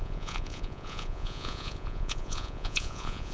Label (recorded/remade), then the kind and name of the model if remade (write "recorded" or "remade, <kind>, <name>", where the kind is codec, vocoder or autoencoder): remade, vocoder, Vocos